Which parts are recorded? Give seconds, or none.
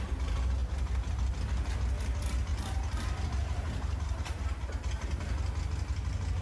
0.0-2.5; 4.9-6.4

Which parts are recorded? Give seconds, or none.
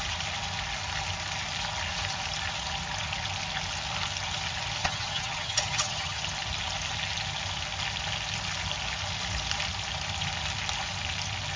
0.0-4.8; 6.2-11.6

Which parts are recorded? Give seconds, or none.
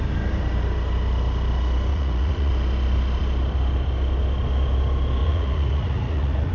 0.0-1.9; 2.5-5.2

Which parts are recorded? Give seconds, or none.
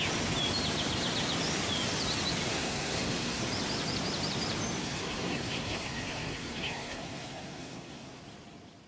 0.0-2.5; 3.4-4.8; 8.2-8.9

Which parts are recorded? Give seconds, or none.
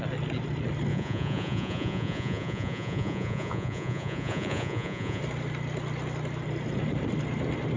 0.0-0.9; 5.2-7.8